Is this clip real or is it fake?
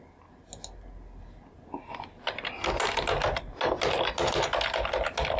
real